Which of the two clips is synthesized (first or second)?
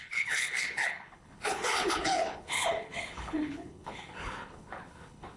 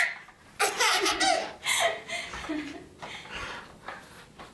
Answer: first